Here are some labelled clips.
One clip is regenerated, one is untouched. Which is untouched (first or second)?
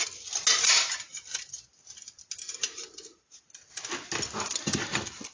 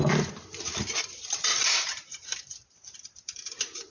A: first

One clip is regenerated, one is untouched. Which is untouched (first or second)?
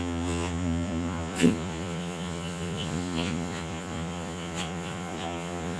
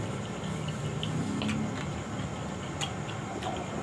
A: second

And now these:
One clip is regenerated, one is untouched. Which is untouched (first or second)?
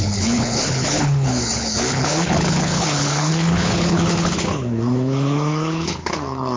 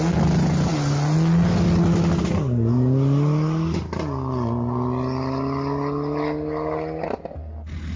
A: second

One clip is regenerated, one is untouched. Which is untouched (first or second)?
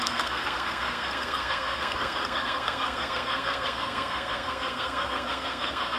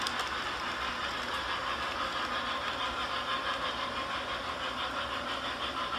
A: second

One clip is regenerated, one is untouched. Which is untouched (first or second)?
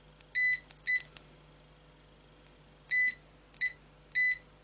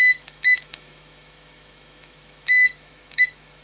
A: first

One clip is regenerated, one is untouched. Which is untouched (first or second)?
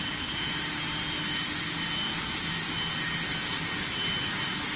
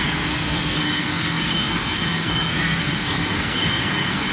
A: first